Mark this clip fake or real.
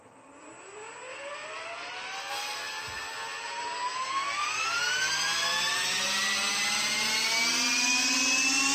real